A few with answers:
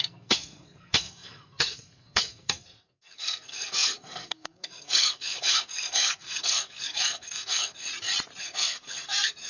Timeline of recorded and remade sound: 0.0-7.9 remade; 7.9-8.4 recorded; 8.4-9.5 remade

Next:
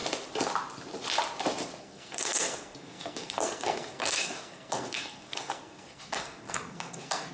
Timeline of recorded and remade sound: 0.0-1.8 recorded; 1.8-7.3 remade

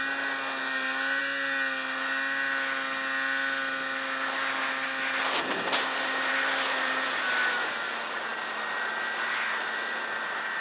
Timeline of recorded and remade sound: 0.0-10.6 recorded

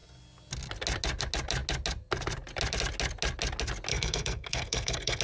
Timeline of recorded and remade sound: 0.0-3.9 recorded; 3.9-5.2 remade

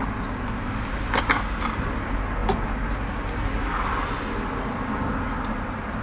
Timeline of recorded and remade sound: 0.0-6.0 recorded

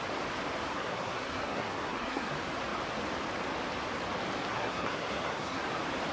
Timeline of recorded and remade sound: 0.0-0.7 recorded; 0.7-2.3 remade; 2.3-4.5 recorded; 4.5-5.6 remade; 5.6-6.1 recorded

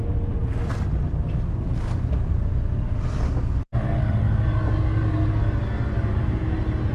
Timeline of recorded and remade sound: 0.0-6.9 recorded

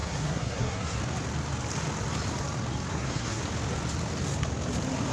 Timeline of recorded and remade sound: 0.0-1.0 remade; 1.0-2.9 recorded; 2.9-3.4 remade; 3.4-5.1 recorded